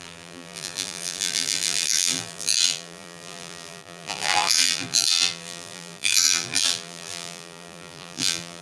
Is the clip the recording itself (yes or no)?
no